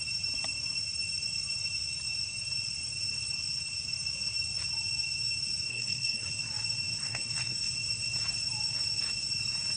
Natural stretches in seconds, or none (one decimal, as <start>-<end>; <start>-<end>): 0.0-5.7; 6.3-7.0; 7.7-9.8

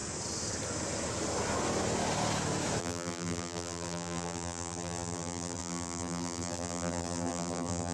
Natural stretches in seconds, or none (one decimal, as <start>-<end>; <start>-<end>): 0.0-2.8

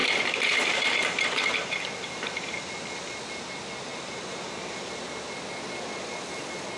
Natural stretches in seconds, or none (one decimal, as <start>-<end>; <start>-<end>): 2.6-3.9; 4.9-6.8

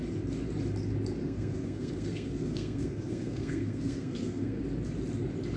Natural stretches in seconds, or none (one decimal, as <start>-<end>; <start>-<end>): 0.0-1.2; 4.6-5.6

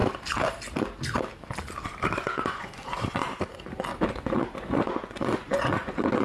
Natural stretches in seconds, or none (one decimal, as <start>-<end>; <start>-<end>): 0.0-2.5; 3.2-4.1

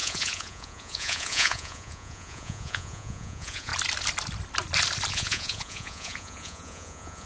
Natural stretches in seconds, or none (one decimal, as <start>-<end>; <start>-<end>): 3.7-5.1

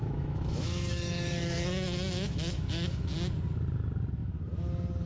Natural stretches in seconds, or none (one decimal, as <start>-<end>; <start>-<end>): 3.1-5.1

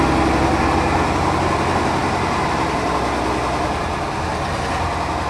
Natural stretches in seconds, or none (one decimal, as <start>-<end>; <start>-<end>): 0.0-5.3